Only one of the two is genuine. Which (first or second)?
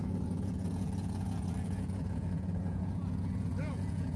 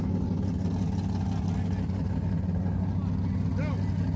second